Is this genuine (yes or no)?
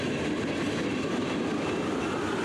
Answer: no